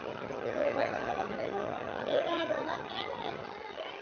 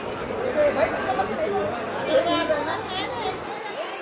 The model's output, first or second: first